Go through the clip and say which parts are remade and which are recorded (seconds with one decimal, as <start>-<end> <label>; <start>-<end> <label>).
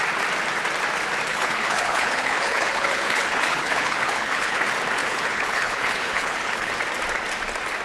0.0-1.3 recorded; 1.3-4.6 remade; 4.6-5.0 recorded; 5.0-6.7 remade; 6.7-7.8 recorded